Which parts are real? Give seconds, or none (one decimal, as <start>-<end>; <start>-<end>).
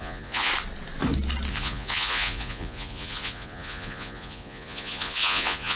0.5-1.5